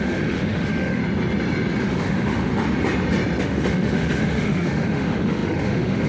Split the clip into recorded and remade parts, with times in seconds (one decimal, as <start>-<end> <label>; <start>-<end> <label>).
0.0-1.0 remade; 1.0-1.9 recorded; 1.9-2.5 remade; 2.5-3.4 recorded; 3.4-6.1 remade

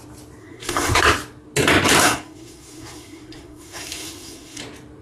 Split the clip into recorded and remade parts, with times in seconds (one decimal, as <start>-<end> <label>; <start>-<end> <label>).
0.0-0.4 recorded; 0.4-1.0 remade; 1.0-2.0 recorded; 2.0-4.6 remade; 4.6-5.0 recorded